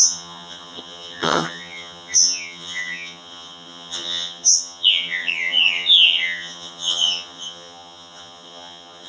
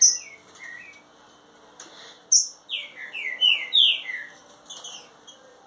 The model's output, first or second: first